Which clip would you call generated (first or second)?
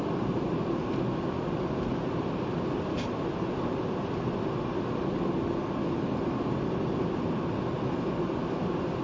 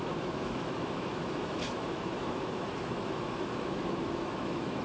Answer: second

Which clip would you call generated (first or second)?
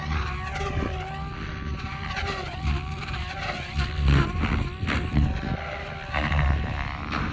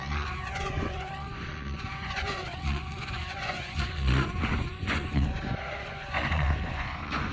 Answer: second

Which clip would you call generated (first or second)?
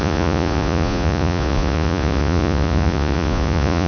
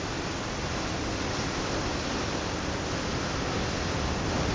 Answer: first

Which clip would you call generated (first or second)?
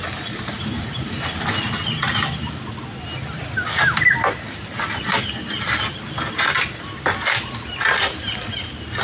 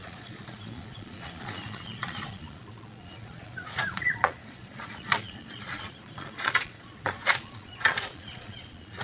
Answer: second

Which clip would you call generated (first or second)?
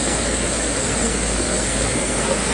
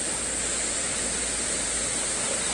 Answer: first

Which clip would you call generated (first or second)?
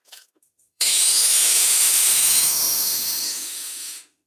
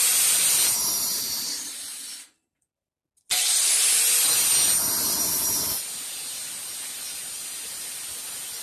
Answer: first